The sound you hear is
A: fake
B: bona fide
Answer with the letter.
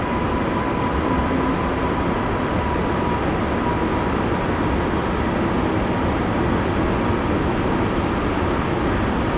B